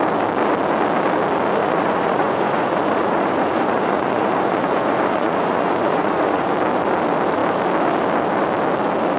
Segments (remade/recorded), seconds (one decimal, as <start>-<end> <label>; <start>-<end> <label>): 0.0-1.6 recorded; 1.6-6.5 remade; 6.5-9.2 recorded

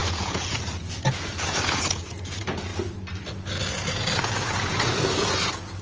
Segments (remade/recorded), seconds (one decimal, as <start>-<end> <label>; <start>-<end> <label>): 0.0-2.7 remade; 2.7-3.7 recorded; 3.7-5.8 remade